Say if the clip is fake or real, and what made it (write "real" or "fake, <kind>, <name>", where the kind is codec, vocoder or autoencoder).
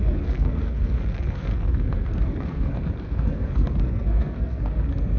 fake, codec, SNAC